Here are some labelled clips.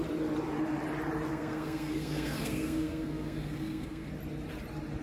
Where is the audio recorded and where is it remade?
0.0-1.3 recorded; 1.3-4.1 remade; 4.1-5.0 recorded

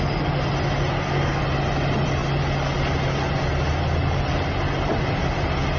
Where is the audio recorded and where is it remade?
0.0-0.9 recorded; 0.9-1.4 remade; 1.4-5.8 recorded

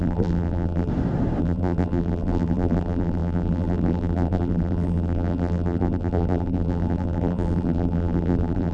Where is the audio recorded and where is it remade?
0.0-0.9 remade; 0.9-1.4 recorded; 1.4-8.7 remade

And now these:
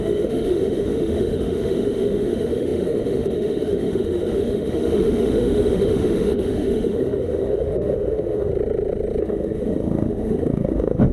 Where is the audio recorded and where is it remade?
0.0-8.5 remade; 8.5-9.2 recorded; 9.2-11.1 remade

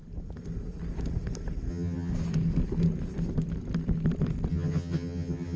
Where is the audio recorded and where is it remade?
0.0-1.7 recorded; 1.7-2.1 remade; 2.1-4.5 recorded; 4.5-5.6 remade